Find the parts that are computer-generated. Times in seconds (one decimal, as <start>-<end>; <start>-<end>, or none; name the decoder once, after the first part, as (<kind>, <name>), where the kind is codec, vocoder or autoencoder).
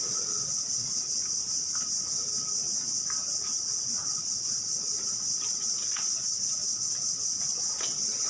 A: 0.0-1.2 (vocoder, WaveNeXt); 4.2-8.3